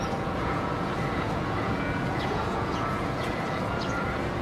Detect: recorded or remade remade